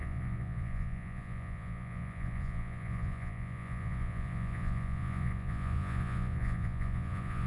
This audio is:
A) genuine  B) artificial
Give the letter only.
B